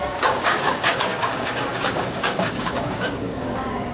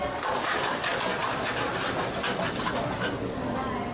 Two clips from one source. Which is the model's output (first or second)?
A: first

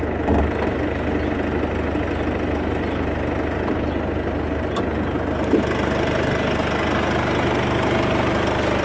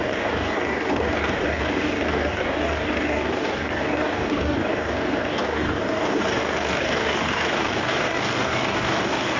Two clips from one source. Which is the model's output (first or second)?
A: second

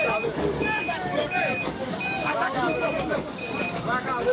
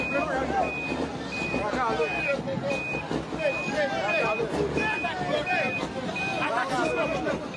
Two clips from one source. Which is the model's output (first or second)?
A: first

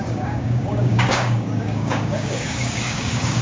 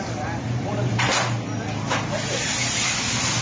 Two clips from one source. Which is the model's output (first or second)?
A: first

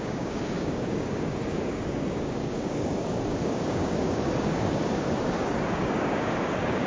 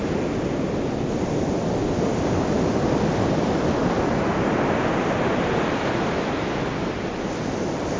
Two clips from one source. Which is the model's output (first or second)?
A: first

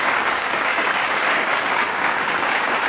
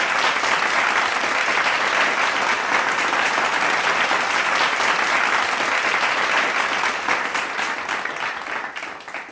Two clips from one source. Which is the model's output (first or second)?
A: first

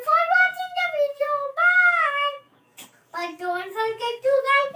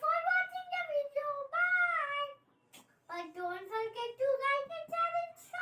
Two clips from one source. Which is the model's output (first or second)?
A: first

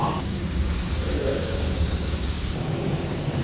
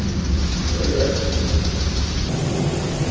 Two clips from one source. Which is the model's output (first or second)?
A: first